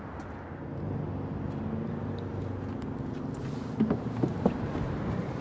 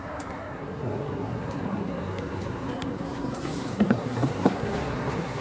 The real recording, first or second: first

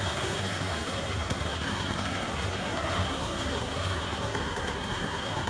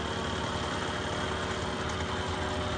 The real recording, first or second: second